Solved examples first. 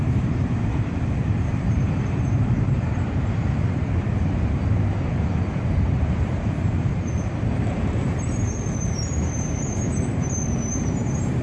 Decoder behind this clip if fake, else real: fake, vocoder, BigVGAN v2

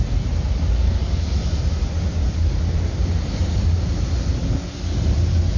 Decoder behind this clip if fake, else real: real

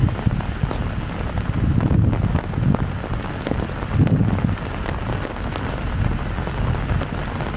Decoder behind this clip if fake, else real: real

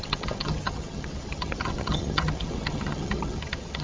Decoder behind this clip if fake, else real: fake, vocoder, HiFi-GAN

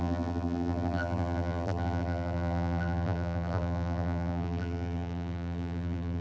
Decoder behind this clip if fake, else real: fake, vocoder, BigVGAN v2